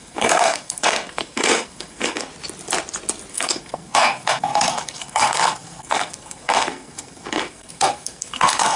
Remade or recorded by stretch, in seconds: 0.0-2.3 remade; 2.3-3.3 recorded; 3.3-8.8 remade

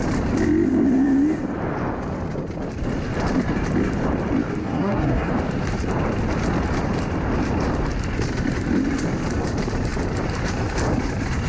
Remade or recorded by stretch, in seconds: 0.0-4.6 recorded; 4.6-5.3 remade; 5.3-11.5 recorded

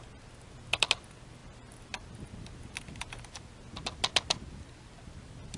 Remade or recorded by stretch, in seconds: 0.0-5.6 recorded

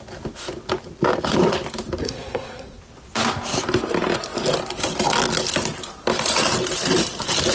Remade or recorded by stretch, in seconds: 0.0-2.0 recorded; 2.0-2.8 remade; 2.8-7.5 recorded